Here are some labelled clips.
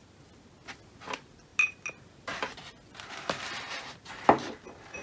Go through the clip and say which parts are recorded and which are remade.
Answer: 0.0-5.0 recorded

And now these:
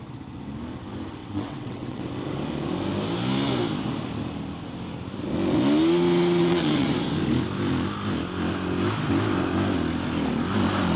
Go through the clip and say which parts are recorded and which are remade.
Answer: 0.0-1.2 recorded; 1.2-2.0 remade; 2.0-6.4 recorded; 6.4-6.9 remade; 6.9-11.0 recorded

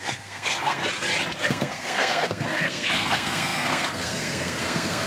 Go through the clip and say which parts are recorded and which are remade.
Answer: 0.0-0.8 remade; 0.8-1.4 recorded; 1.4-5.1 remade

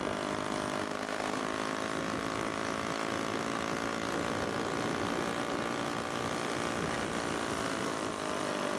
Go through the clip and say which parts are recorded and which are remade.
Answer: 0.0-0.8 recorded; 0.8-1.4 remade; 1.4-8.8 recorded

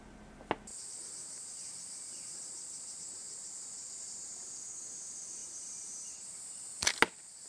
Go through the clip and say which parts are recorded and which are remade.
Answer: 0.0-0.7 recorded; 0.7-4.5 remade; 4.5-5.4 recorded; 5.4-6.4 remade; 6.4-7.5 recorded

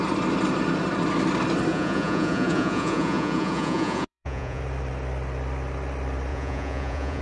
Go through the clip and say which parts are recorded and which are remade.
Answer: 0.0-1.7 recorded; 1.7-4.6 remade; 4.6-6.3 recorded; 6.3-7.2 remade

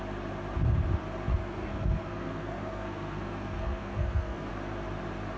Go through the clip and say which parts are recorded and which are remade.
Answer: 0.0-1.3 recorded; 1.3-4.5 remade; 4.5-5.4 recorded